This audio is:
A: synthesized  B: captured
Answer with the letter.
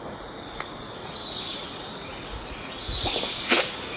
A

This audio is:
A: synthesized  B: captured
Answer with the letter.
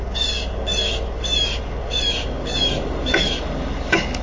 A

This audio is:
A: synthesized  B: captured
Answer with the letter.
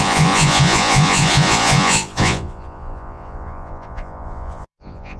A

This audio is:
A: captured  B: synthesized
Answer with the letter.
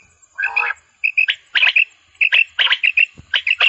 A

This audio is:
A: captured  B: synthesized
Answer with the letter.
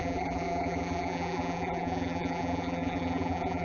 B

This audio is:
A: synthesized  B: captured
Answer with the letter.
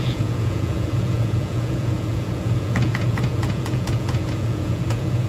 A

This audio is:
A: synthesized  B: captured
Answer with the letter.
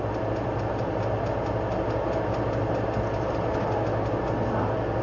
B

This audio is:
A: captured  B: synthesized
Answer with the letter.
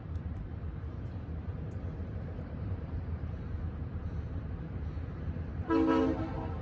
B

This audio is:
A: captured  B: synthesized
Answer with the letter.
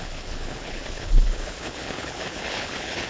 B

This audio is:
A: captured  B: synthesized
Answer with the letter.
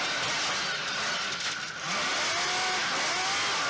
A